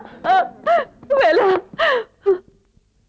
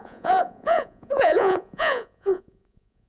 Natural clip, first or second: first